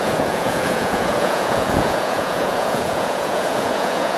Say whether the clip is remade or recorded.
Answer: remade